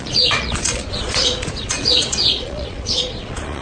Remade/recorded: remade